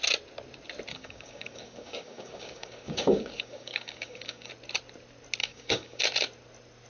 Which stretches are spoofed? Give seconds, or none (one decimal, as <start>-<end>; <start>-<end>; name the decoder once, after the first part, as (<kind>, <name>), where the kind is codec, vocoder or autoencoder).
0.9-4.5 (codec, DAC); 5.4-6.0